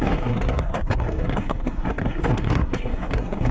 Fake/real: fake